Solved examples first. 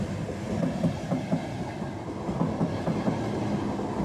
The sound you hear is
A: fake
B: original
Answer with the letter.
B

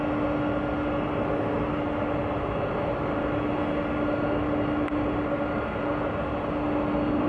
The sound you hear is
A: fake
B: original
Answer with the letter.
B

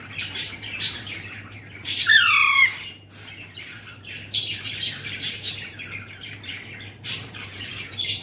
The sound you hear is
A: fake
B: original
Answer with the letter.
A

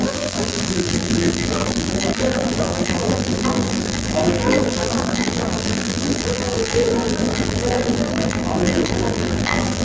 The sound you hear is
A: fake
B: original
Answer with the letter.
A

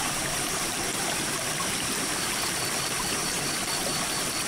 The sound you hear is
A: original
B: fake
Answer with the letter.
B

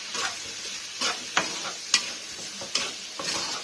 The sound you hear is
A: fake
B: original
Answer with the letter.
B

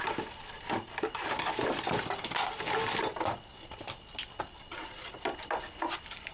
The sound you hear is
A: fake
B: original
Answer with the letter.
B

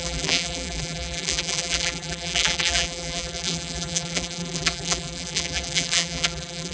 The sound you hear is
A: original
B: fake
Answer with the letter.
B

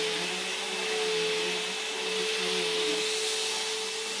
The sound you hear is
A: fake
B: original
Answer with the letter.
B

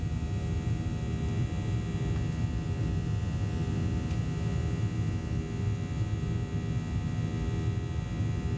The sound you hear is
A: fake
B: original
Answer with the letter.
B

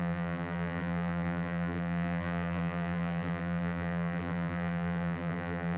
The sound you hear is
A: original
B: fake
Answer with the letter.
B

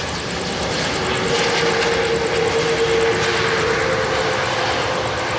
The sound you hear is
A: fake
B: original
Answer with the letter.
B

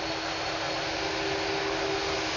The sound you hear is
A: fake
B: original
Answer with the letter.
B